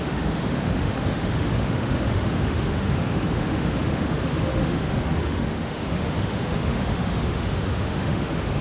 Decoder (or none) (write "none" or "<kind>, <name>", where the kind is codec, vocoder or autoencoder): autoencoder, DAC-VAE